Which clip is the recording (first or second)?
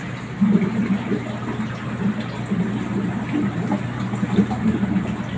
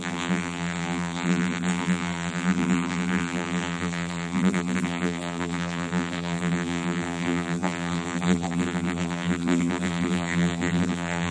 first